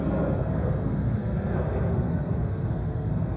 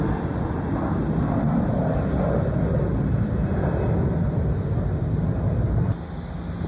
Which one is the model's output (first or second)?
first